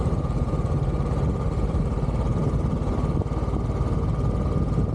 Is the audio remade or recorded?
recorded